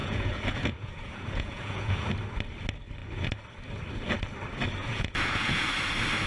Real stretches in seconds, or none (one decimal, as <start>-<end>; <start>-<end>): 2.1-4.8; 5.6-6.3